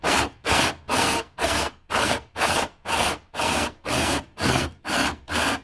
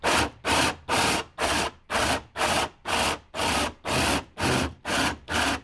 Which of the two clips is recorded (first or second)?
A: second